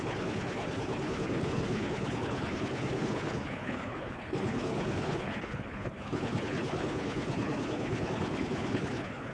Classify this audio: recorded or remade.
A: remade